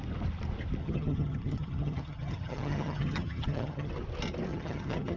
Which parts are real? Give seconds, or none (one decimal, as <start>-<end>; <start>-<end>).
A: 0.0-0.8; 3.9-4.5